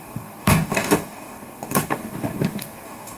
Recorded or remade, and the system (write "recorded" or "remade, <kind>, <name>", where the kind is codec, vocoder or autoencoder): remade, codec, DAC